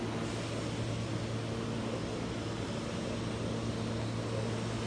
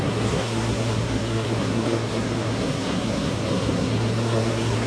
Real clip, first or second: first